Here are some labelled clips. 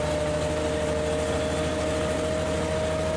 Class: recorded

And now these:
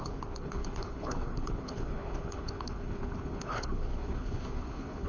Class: remade